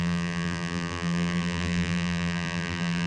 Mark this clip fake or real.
fake